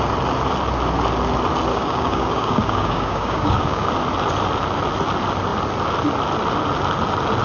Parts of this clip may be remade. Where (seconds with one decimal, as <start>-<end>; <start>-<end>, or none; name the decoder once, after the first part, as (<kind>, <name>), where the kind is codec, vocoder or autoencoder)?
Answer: 1.7-3.9 (codec, DAC)